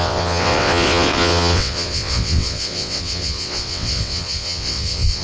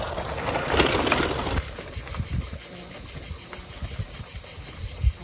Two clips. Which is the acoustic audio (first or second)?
second